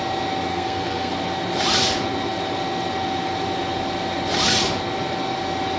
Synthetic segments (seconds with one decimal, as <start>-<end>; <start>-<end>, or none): 0.5-1.1